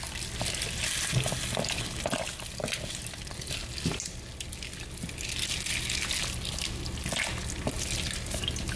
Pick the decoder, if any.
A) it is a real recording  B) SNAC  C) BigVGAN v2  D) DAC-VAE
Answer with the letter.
A